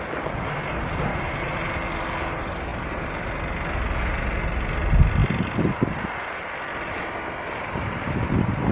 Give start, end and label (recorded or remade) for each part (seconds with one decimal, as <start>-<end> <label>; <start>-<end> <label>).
0.0-1.1 recorded; 1.1-1.9 remade; 1.9-8.7 recorded